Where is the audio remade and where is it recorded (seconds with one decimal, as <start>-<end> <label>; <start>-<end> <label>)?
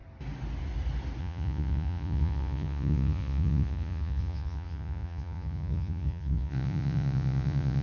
0.0-1.2 recorded; 1.2-7.8 remade